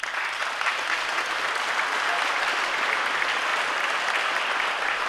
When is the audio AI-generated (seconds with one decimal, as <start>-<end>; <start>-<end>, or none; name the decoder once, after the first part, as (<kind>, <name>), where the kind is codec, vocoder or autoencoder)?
none